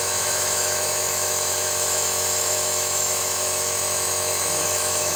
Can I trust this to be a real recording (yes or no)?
no